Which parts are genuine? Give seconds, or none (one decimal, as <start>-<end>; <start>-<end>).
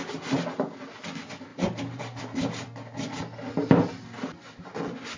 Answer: 0.0-1.5; 2.2-5.2